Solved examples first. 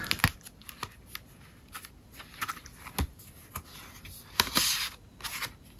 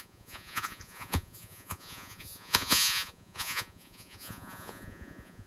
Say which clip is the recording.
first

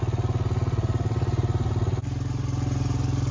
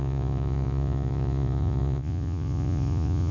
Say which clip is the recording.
first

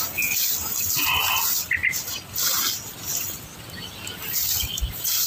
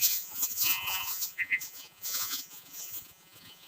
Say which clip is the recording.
first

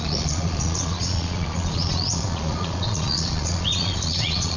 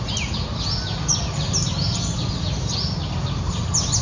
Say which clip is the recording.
second